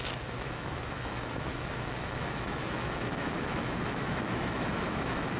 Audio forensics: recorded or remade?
remade